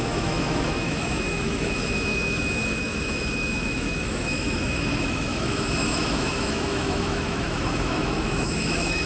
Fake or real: fake